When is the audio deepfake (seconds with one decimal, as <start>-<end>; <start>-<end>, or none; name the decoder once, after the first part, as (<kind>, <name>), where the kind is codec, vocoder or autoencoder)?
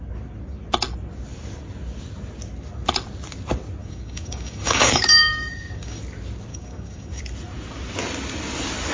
3.8-6.0 (codec, DAC); 6.5-7.2